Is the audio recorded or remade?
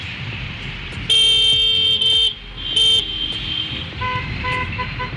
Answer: recorded